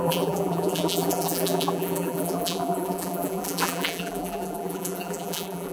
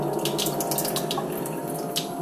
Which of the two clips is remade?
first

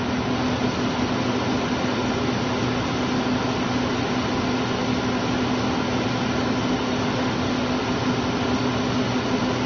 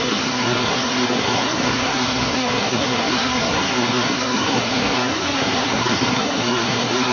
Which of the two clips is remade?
second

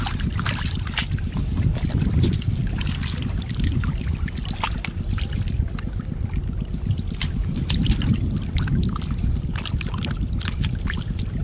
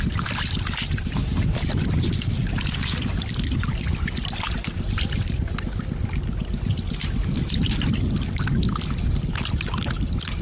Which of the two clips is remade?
first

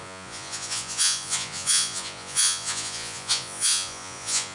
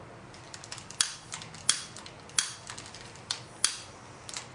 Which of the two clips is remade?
first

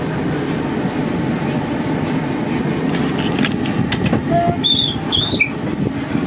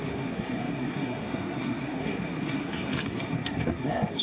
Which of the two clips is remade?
second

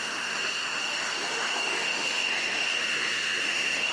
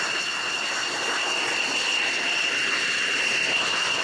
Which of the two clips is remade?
first